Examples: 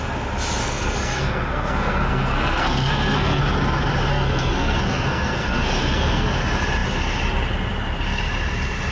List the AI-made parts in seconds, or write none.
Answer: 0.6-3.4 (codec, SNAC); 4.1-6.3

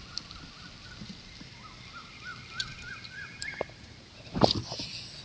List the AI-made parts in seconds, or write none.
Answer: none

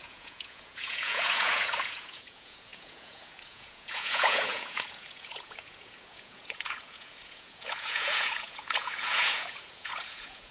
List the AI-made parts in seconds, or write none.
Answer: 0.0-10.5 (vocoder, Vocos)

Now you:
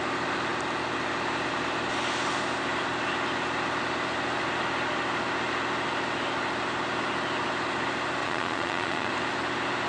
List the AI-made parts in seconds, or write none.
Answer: 8.2-9.1 (vocoder, Vocos)

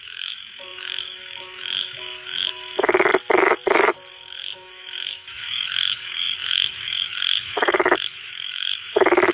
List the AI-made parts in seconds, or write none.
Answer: 0.0-3.1 (autoencoder, DAC-VAE); 4.1-9.3

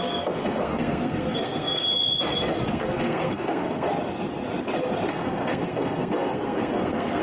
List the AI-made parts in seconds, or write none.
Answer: 0.0-1.9 (codec, SNAC); 2.7-3.9; 5.1-7.2